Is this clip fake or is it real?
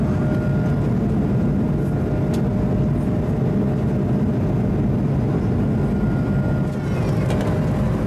real